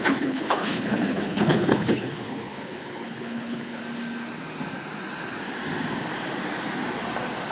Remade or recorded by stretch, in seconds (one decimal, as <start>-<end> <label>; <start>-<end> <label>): 0.0-3.8 remade; 3.8-7.5 recorded